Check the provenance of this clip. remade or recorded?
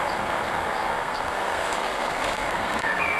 remade